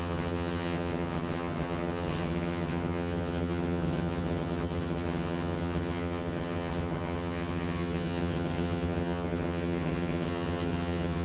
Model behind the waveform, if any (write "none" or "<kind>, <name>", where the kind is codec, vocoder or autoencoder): vocoder, HiFi-GAN